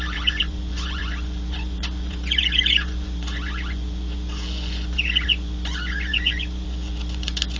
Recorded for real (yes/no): no